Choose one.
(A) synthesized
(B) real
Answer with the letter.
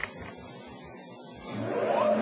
B